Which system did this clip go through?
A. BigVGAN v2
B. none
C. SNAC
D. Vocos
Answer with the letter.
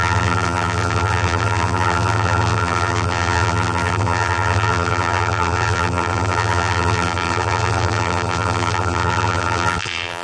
A